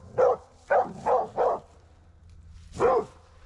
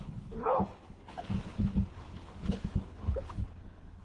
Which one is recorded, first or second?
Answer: first